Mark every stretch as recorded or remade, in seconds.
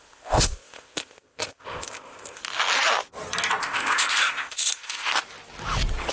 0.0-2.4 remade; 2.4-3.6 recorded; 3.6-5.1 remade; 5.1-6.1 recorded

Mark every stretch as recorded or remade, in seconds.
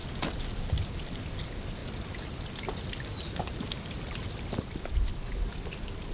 0.0-6.1 recorded